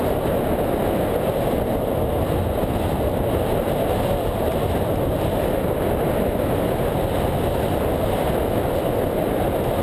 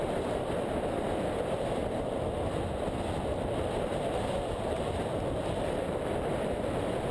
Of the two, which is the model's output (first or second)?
second